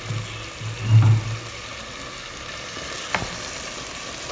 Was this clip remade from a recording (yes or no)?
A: no